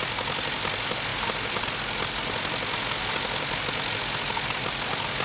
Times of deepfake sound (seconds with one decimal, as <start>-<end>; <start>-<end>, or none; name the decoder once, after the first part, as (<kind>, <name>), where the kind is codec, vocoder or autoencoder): none